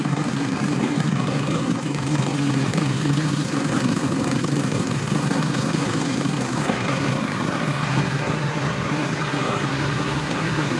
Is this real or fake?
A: fake